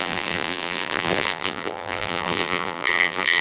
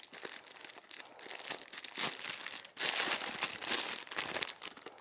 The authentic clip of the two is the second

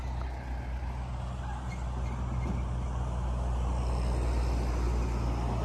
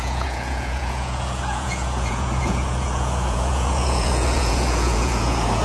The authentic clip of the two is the first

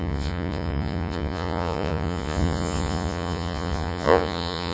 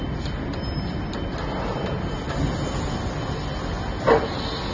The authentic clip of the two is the second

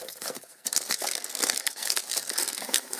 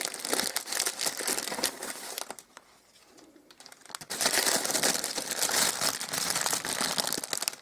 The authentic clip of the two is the second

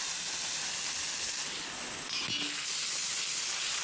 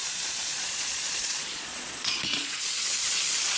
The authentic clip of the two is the first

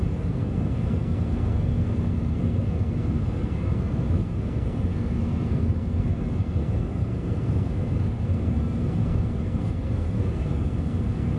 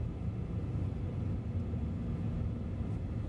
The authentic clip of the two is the second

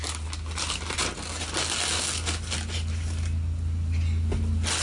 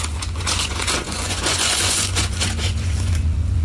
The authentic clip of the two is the first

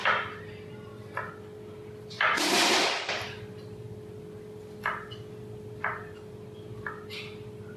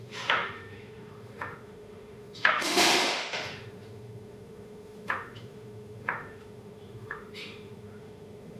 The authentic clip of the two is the first